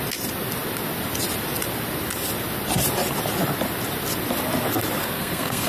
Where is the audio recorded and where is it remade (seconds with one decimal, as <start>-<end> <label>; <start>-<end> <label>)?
0.0-5.0 recorded; 5.0-5.7 remade

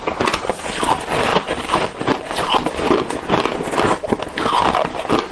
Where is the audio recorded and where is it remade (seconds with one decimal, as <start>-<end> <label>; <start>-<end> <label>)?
0.0-5.3 recorded

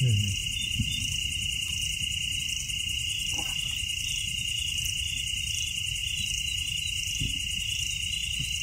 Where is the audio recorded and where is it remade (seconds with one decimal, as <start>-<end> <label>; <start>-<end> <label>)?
0.0-8.6 recorded

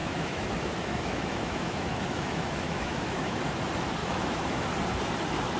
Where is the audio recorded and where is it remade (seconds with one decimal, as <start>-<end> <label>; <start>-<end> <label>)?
0.0-3.4 remade; 3.4-4.0 recorded; 4.0-4.6 remade; 4.6-5.6 recorded

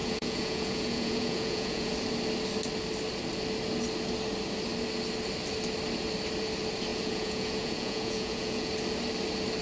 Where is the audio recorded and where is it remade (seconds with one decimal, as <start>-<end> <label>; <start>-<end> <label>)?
0.0-1.9 remade; 1.9-6.9 recorded; 6.9-8.7 remade; 8.7-9.6 recorded

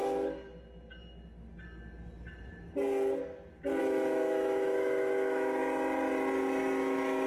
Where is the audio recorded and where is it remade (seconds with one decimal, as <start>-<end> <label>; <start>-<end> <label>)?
0.0-3.8 recorded; 3.8-5.6 remade; 5.6-7.3 recorded